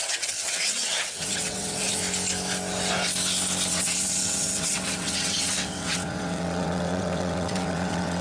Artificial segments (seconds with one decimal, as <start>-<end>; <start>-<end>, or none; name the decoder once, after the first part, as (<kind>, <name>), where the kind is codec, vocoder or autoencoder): 0.0-2.0 (vocoder, WaveNeXt); 3.7-8.2